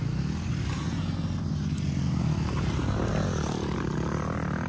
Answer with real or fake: real